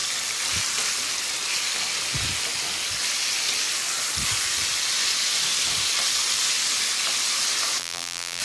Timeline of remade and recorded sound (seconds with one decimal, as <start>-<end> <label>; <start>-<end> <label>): 0.0-7.8 recorded; 7.8-8.4 remade